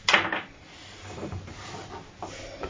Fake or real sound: real